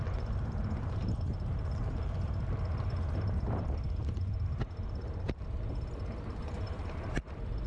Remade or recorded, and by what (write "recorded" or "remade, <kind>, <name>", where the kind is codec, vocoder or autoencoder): remade, vocoder, BigVGAN v2